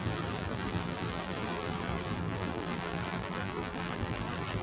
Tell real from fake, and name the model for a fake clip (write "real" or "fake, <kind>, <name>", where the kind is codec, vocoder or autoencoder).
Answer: fake, vocoder, BigVGAN v2